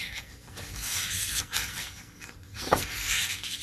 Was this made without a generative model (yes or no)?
no